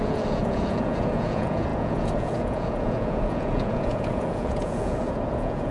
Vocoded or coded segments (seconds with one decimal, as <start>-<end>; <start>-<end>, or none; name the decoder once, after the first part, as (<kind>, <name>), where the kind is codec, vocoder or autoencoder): 0.0-5.7 (vocoder, Vocos)